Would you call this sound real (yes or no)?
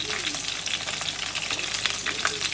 yes